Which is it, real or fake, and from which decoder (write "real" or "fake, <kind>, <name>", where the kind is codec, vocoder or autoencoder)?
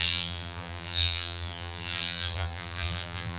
fake, vocoder, BigVGAN v2